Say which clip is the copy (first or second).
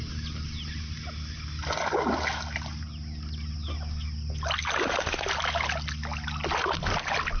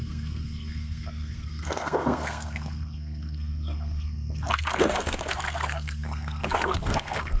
second